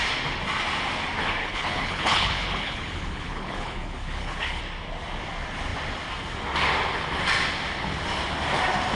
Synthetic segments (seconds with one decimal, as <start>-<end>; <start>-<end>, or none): 1.4-4.6